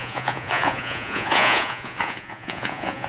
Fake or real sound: fake